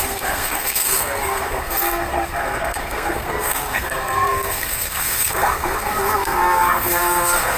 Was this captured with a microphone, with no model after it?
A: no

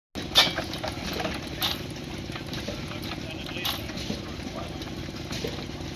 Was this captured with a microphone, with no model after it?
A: yes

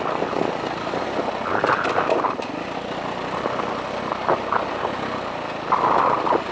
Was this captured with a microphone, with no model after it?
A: yes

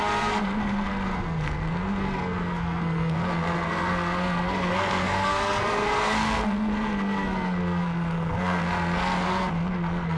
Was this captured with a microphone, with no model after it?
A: no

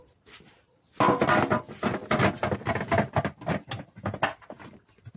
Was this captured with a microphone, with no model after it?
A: yes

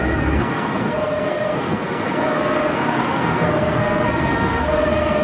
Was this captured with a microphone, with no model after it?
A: no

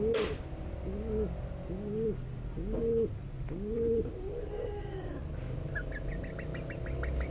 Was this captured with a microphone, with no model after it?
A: yes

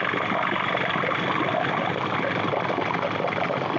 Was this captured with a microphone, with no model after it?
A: yes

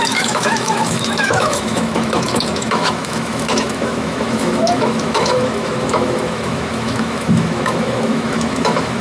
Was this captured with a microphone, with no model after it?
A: no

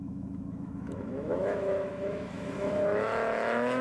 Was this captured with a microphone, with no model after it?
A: no